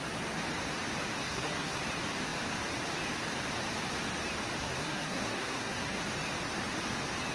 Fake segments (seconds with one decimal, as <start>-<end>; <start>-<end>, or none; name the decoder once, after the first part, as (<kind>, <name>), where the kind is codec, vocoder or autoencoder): 1.2-1.8 (codec, SNAC); 4.6-6.0